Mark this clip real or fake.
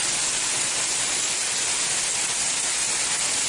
real